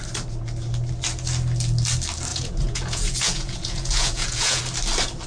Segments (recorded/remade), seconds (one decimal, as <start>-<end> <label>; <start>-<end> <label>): 0.0-2.3 recorded; 2.3-4.6 remade; 4.6-5.3 recorded